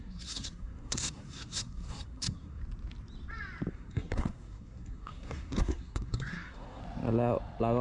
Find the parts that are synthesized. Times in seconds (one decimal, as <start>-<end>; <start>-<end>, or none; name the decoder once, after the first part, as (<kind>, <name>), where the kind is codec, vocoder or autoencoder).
0.0-2.6 (codec, SNAC); 3.7-6.8